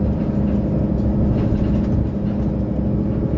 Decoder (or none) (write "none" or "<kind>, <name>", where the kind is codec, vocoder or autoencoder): none